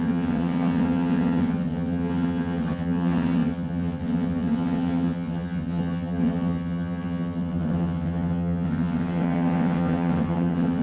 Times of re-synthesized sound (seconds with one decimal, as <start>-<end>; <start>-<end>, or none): 0.0-10.8